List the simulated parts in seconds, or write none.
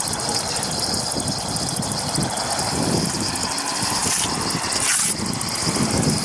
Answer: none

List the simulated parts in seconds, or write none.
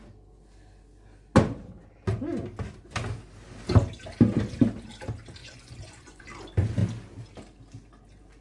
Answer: 5.4-6.2 (vocoder, Vocos)